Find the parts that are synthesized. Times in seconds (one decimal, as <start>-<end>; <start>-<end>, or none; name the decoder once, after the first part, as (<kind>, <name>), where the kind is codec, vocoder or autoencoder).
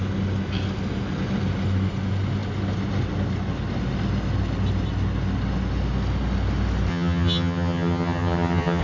6.9-8.8 (vocoder, HiFi-GAN)